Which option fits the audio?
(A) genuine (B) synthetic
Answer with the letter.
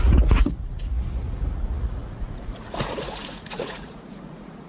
B